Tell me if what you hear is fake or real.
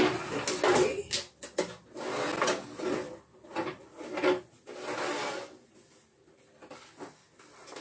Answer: real